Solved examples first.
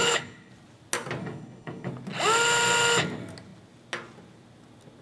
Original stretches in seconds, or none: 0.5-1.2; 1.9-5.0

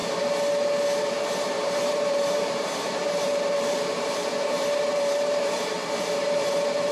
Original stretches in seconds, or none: 0.0-1.0